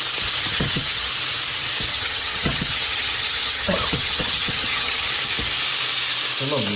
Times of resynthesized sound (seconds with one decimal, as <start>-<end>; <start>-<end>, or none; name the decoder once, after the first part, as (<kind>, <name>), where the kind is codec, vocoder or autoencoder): 0.5-1.1 (vocoder, HiFi-GAN); 1.9-5.1

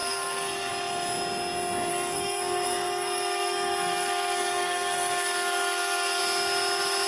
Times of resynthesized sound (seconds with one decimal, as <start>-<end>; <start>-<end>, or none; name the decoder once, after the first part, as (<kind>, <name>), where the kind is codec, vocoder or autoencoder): 0.0-0.7 (codec, SNAC); 1.9-6.2

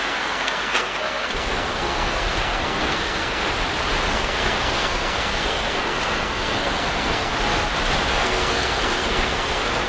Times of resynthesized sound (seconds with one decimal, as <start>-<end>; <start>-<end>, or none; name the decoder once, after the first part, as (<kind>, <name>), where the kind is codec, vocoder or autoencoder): 0.0-3.4 (codec, SNAC); 4.1-7.3; 8.1-9.9

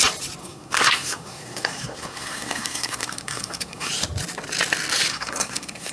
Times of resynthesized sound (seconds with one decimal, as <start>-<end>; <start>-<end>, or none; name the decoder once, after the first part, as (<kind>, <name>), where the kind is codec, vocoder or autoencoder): 0.4-3.9 (codec, SNAC); 5.1-5.9